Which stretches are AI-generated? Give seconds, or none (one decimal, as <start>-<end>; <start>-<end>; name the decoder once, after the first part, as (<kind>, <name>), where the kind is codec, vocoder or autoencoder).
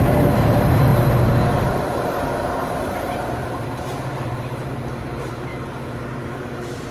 0.0-0.9 (vocoder, BigVGAN v2); 1.6-5.5; 6.1-6.9